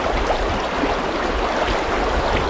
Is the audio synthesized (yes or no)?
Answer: no